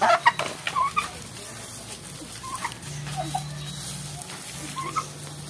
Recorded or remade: recorded